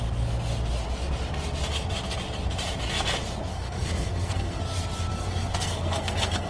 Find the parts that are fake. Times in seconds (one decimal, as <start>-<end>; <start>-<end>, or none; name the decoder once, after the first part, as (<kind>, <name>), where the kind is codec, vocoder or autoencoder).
3.5-4.6 (codec, SNAC); 5.1-6.5